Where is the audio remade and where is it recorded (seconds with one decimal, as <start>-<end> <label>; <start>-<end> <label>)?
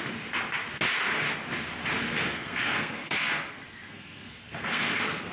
0.0-2.0 recorded; 2.0-5.3 remade